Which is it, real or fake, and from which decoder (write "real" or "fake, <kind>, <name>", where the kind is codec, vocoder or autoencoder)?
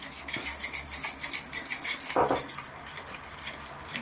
real